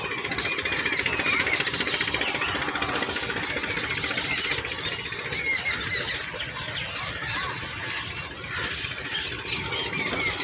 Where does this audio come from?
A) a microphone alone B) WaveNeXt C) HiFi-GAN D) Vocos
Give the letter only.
A